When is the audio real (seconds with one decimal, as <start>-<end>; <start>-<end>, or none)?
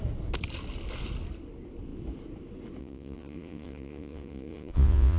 0.0-2.8